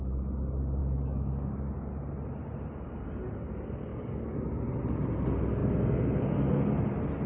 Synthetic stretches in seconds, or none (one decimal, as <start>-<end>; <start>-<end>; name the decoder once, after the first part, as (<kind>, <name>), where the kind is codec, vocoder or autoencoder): 0.8-1.7 (codec, DAC); 3.9-4.7